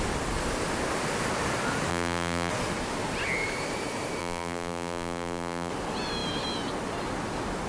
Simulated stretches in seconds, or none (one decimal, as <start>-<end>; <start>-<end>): 1.9-2.5; 4.2-5.7